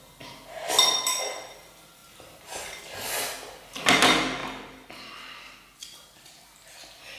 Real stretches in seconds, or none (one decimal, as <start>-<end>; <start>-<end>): 0.0-7.2